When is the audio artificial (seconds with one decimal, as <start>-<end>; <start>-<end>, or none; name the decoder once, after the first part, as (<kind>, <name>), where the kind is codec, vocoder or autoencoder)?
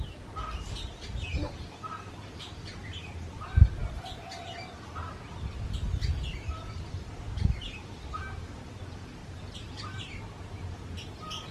9.2-10.6 (vocoder, BigVGAN v2)